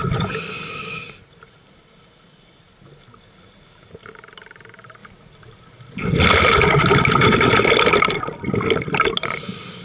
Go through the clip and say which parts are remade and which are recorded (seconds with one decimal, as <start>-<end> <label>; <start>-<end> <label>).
0.0-9.8 recorded